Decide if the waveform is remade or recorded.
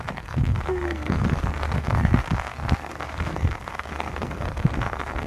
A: remade